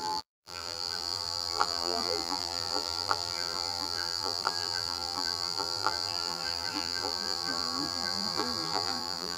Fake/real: fake